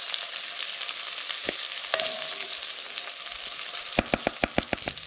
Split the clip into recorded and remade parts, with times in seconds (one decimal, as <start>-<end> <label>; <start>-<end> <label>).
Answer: 0.0-5.1 recorded